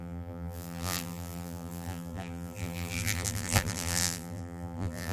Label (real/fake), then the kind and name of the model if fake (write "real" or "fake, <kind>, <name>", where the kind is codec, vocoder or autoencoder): fake, vocoder, BigVGAN v2